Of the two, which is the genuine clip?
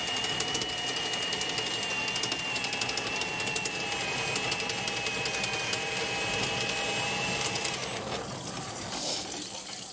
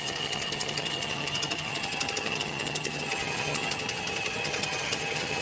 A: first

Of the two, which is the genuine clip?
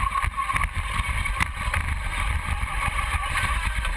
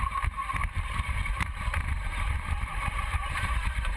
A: first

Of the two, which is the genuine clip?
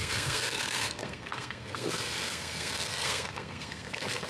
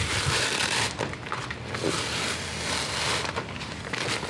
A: second